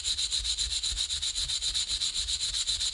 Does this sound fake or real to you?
real